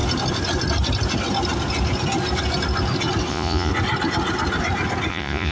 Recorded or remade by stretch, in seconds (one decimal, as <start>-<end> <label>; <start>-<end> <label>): 0.0-3.3 recorded; 3.3-3.7 remade; 3.7-5.1 recorded; 5.1-5.5 remade